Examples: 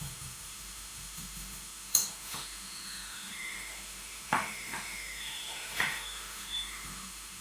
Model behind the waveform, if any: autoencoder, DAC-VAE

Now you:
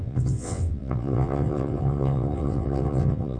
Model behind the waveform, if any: vocoder, WaveNeXt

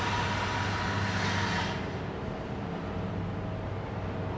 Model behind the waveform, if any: none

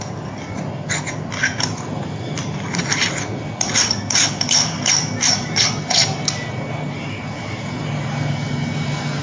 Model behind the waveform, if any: none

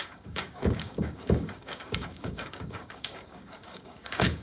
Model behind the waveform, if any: codec, DAC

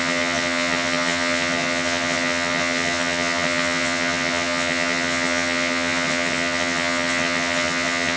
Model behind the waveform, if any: vocoder, HiFi-GAN